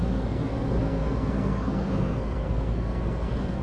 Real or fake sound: fake